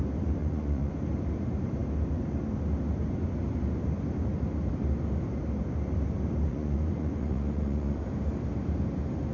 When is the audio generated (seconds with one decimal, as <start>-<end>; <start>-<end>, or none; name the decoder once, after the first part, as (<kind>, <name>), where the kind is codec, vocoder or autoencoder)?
0.4-0.9 (vocoder, Vocos); 6.5-8.0